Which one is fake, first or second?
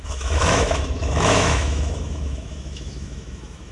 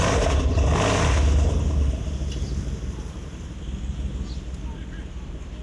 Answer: first